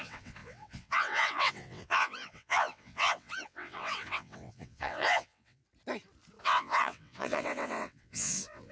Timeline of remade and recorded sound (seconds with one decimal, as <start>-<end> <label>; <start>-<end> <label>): 0.0-5.6 remade; 5.6-6.4 recorded; 6.4-8.7 remade